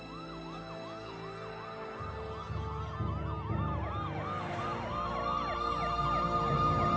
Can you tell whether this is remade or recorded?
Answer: recorded